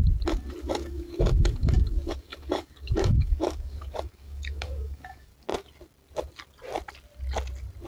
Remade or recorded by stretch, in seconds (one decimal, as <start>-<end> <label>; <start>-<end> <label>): 0.0-0.6 recorded; 0.6-5.3 remade; 5.3-7.9 recorded